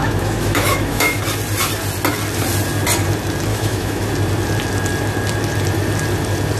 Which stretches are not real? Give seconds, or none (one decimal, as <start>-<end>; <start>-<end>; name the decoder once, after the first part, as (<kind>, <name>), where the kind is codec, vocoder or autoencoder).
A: 0.0-1.2 (autoencoder, DAC-VAE); 3.5-4.1